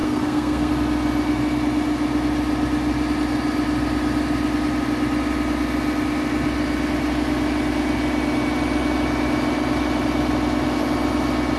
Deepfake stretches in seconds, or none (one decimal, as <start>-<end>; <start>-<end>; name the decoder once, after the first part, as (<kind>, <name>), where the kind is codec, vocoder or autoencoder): 0.0-0.7 (codec, SNAC)